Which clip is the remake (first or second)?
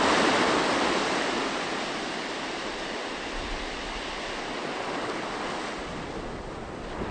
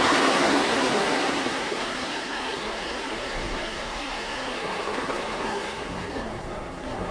second